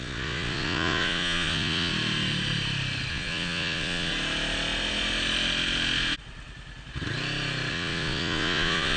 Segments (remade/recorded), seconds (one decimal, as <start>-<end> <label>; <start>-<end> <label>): 0.0-1.9 remade; 1.9-3.1 recorded; 3.1-4.1 remade; 4.1-7.7 recorded; 7.7-9.0 remade